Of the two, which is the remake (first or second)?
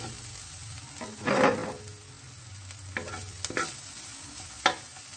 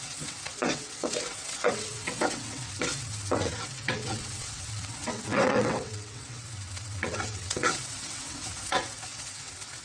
second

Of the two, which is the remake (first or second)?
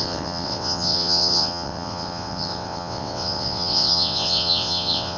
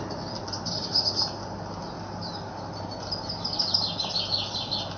first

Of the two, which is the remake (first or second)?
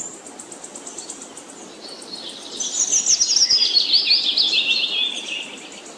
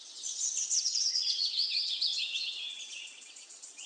second